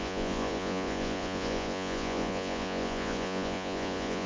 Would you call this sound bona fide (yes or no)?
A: no